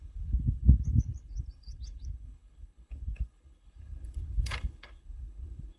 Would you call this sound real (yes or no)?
no